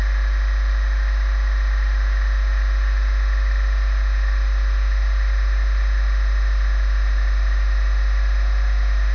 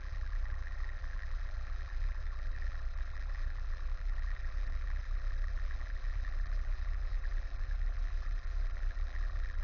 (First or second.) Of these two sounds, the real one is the first